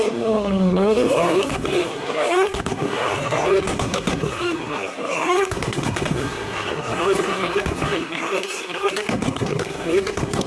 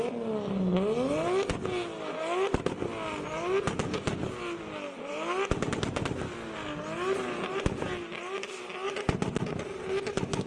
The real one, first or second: second